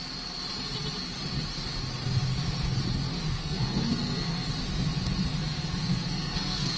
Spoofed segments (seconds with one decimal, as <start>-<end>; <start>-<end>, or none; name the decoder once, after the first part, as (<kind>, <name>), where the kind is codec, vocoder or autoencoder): 3.3-4.5 (codec, SNAC); 5.9-6.8